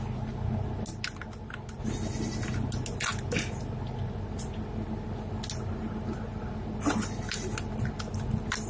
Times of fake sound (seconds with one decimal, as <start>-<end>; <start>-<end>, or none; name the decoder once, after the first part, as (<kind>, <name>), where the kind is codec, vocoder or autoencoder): none